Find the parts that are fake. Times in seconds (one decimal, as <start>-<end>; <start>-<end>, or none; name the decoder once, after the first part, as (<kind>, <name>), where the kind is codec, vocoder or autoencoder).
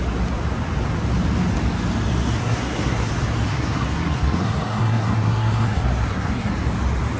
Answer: 2.4-3.1 (codec, SNAC); 3.5-6.5